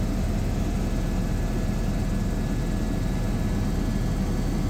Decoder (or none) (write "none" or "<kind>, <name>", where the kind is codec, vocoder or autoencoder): none